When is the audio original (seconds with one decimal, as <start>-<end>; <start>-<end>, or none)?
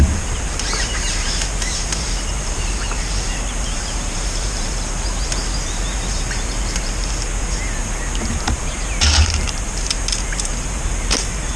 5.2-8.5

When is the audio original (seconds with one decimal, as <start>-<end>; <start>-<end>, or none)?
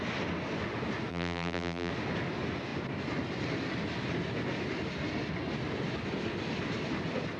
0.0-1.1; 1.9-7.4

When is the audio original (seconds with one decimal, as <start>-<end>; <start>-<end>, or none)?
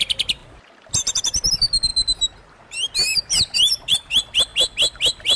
0.0-0.4; 1.5-3.1; 4.1-5.4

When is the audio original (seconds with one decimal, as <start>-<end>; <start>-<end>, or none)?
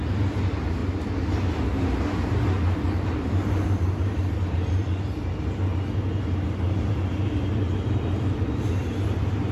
0.8-2.9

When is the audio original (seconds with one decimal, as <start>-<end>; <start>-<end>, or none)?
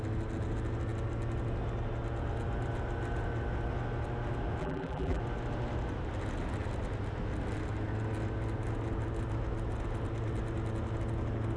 0.0-4.6; 5.2-11.6